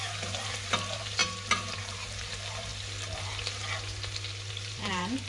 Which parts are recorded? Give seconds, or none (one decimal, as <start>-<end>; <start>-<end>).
1.2-1.8; 2.7-4.5